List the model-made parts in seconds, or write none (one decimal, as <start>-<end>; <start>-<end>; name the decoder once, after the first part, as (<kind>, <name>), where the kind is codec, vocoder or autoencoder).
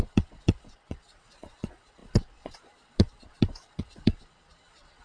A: 0.0-5.0 (vocoder, Vocos)